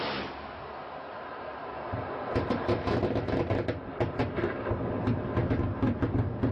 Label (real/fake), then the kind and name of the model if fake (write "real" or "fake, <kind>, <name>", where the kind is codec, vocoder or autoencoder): real